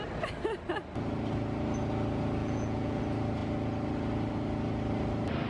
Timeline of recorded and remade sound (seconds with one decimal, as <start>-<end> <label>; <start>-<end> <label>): 0.0-2.4 recorded; 2.4-3.0 remade; 3.0-5.5 recorded